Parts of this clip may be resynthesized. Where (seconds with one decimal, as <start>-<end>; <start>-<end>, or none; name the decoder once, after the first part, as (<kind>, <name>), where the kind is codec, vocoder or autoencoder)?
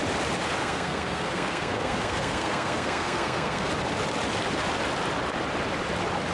0.6-3.7 (codec, SNAC)